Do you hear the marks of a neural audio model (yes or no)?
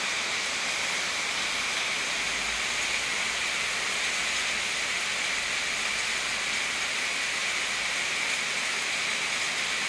no